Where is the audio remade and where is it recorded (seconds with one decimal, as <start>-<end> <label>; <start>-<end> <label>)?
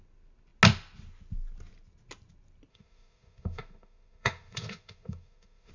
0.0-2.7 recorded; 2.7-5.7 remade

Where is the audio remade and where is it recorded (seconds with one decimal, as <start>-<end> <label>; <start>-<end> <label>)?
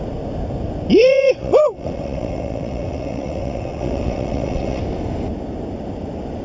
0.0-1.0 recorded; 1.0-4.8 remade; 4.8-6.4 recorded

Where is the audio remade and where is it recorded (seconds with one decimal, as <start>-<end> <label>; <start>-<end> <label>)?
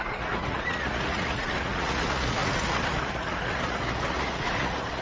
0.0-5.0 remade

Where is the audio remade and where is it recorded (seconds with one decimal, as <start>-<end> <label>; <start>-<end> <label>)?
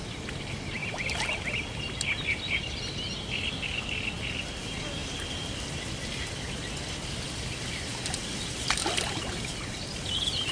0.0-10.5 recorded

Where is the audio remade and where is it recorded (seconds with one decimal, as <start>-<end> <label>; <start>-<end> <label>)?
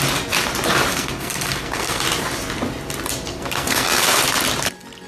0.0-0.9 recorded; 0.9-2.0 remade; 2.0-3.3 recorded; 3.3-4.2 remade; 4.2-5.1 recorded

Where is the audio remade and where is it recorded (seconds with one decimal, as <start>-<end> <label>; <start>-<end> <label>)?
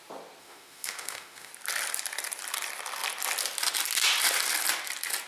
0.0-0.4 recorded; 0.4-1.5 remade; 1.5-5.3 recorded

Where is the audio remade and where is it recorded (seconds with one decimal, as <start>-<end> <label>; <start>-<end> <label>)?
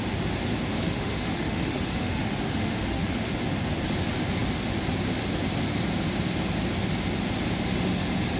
0.0-0.7 recorded; 0.7-3.3 remade; 3.3-8.4 recorded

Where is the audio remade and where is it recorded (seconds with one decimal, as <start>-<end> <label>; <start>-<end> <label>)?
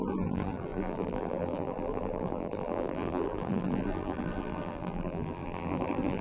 0.0-6.2 remade